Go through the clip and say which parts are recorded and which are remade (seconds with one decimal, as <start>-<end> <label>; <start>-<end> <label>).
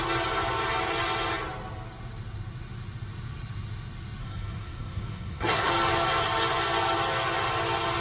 0.0-4.2 recorded; 4.2-5.7 remade; 5.7-8.0 recorded